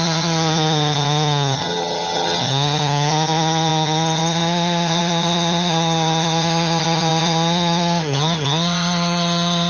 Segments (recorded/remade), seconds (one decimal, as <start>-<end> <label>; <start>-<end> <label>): 0.0-9.7 remade